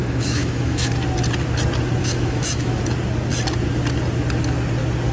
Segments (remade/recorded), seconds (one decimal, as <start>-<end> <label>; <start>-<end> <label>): 0.0-0.9 remade; 0.9-2.0 recorded; 2.0-2.8 remade; 2.8-5.1 recorded